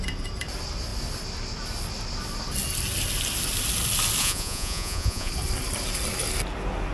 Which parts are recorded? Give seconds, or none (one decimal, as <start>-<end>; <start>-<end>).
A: 0.0-4.2; 5.3-6.9